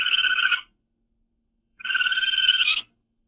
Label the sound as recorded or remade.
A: remade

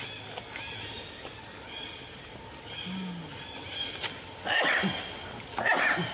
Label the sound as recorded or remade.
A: recorded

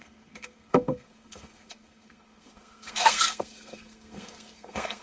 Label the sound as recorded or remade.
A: remade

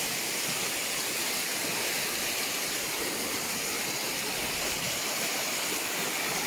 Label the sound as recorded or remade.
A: recorded